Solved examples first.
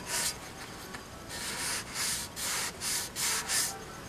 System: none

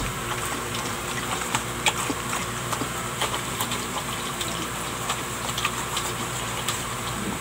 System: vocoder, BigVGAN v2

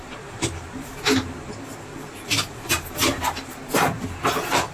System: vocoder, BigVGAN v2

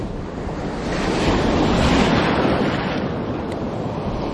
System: none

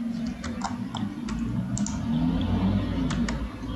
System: none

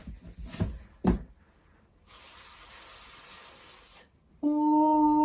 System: none